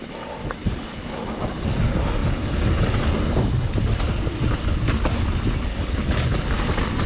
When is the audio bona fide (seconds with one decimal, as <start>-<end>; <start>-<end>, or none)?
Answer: 0.0-7.1